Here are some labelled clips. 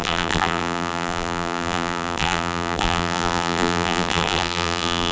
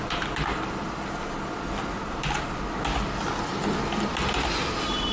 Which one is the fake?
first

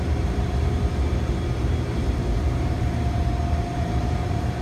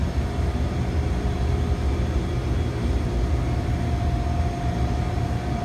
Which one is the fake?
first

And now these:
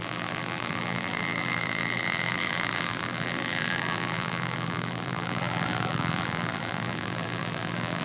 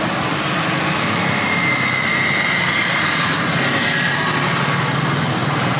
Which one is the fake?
first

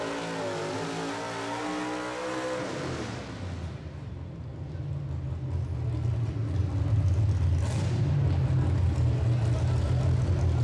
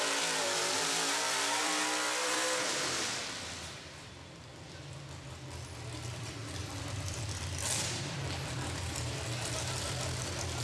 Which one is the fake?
second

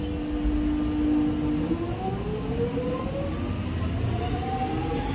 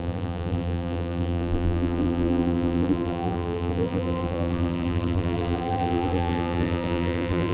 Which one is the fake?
second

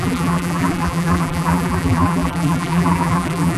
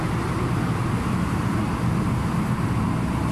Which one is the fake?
first